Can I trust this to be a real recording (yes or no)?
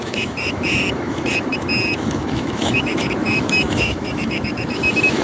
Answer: no